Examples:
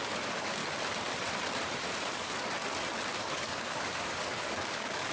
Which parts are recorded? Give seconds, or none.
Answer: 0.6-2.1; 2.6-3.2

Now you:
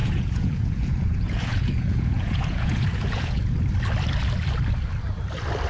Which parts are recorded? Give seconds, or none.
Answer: 3.4-5.7

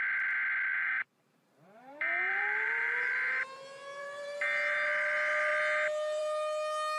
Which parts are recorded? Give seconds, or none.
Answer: 0.0-0.7; 3.1-4.0; 4.7-7.0

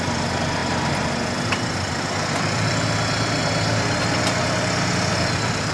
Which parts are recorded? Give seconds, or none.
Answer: 3.4-5.1